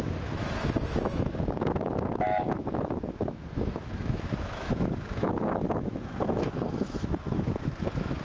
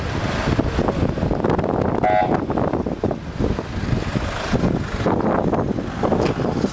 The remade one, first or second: first